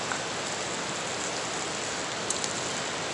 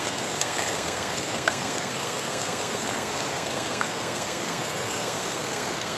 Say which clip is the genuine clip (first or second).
first